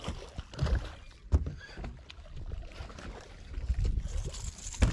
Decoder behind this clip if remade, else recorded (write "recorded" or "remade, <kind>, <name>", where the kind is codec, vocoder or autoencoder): recorded